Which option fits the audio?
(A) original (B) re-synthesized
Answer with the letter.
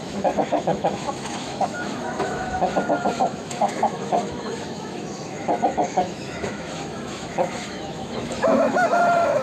B